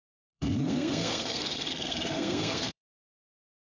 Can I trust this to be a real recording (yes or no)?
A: no